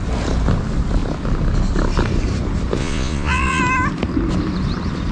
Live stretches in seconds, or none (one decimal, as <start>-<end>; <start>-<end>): 0.0-2.8; 3.6-5.1

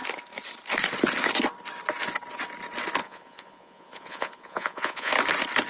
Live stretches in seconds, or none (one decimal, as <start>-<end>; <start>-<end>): 0.0-3.0; 5.1-5.7

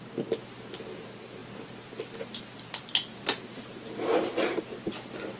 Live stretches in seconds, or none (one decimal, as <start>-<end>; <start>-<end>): 0.0-5.4

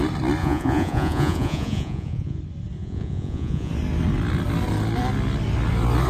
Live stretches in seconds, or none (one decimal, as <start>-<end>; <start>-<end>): 0.0-0.4; 2.4-2.8; 3.7-6.1

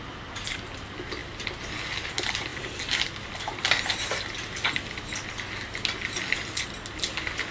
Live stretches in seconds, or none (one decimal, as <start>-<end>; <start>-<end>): 0.0-7.5